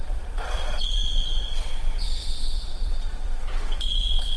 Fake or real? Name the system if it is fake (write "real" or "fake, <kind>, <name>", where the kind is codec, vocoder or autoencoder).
fake, vocoder, Vocos